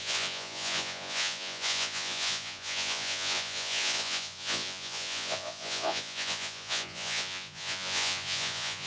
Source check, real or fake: fake